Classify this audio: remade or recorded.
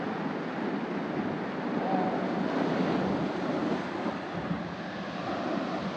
recorded